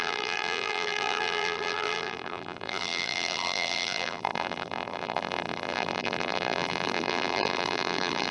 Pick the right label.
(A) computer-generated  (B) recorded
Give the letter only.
A